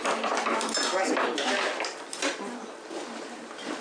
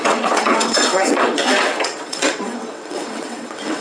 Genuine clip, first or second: first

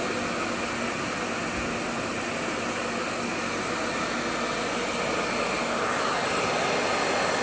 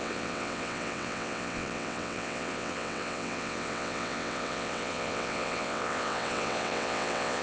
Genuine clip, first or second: first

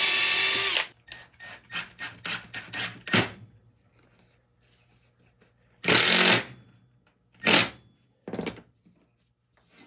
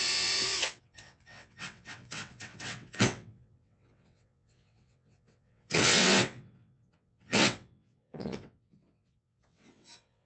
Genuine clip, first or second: first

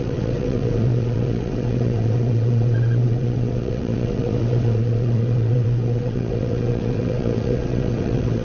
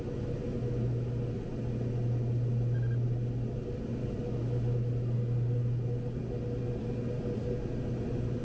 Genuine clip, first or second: second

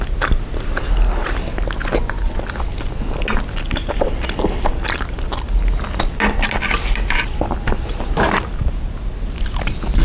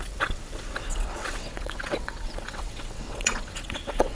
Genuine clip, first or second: first